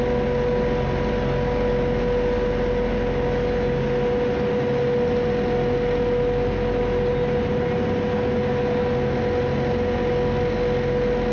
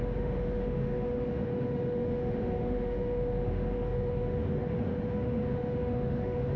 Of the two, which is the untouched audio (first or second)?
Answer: first